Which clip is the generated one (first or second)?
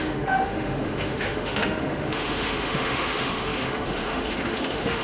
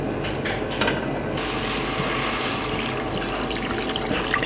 first